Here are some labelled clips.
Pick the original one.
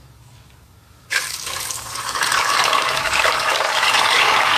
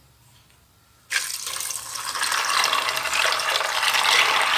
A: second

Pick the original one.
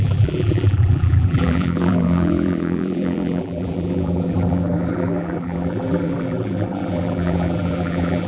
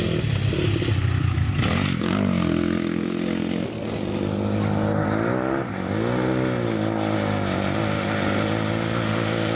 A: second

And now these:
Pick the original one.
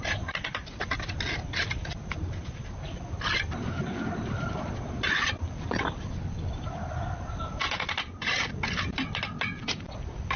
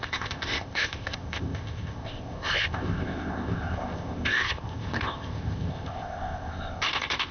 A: first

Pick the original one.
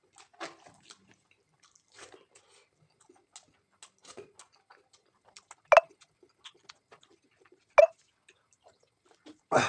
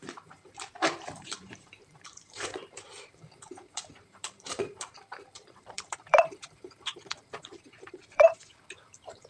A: first